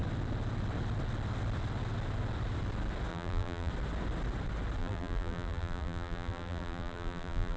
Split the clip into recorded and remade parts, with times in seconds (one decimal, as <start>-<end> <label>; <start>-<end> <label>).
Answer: 0.0-3.1 recorded; 3.1-3.7 remade; 3.7-4.8 recorded; 4.8-7.6 remade